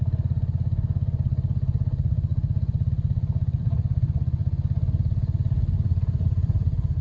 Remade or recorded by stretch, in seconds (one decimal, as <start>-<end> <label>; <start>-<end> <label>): 0.0-7.0 recorded